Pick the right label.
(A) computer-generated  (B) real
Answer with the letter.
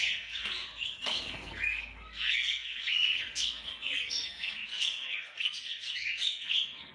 A